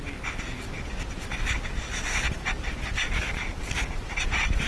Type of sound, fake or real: real